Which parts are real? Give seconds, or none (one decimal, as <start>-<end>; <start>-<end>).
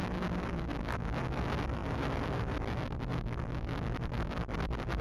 0.0-1.8